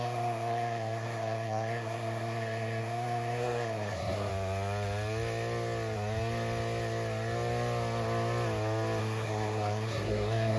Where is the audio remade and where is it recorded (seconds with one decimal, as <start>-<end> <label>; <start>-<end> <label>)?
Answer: 0.0-4.3 remade; 4.3-9.0 recorded; 9.0-10.6 remade